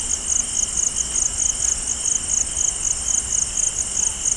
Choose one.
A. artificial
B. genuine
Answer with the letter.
B